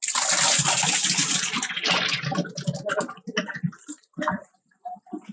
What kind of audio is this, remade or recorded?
recorded